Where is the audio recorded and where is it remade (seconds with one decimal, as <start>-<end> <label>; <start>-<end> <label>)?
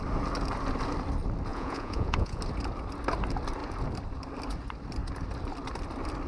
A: 0.0-1.5 recorded; 1.5-2.4 remade; 2.4-6.3 recorded